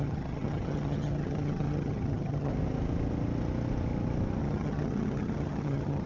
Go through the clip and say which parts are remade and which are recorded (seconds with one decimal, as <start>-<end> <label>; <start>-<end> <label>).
0.0-2.5 remade; 2.5-4.4 recorded; 4.4-6.1 remade

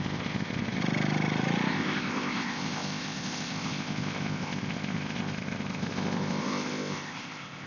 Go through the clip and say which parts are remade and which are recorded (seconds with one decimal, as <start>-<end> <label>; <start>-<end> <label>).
0.0-0.8 remade; 0.8-1.7 recorded; 1.7-7.7 remade